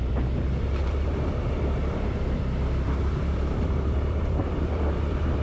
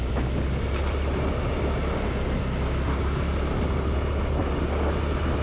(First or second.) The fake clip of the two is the first